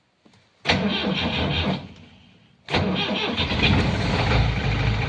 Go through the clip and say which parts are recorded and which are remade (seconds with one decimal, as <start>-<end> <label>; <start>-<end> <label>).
0.0-5.1 recorded